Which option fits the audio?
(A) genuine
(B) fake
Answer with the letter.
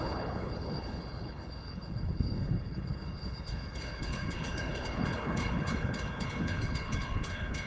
B